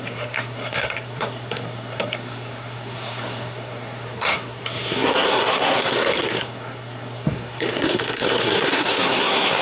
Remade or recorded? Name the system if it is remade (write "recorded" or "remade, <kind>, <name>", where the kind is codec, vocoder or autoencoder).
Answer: remade, codec, SNAC